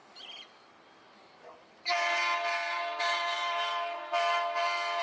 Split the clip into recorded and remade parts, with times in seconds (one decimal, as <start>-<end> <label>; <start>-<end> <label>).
0.0-3.0 recorded; 3.0-4.0 remade; 4.0-5.0 recorded